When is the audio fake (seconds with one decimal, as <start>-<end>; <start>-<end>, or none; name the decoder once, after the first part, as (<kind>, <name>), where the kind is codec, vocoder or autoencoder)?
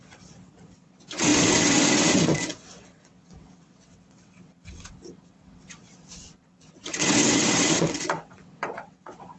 0.0-9.4 (vocoder, WaveNeXt)